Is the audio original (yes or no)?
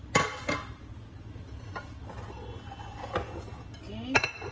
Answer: yes